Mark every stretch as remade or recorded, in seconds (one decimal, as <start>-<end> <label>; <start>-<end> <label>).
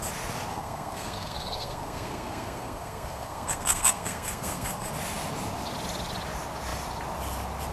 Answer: 0.0-0.5 recorded; 0.5-4.9 remade; 4.9-7.7 recorded